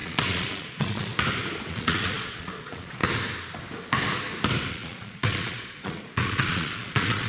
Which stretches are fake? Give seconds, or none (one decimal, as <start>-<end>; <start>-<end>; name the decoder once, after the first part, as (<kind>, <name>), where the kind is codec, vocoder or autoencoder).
0.0-1.1 (vocoder, Vocos); 1.7-3.0; 4.7-7.3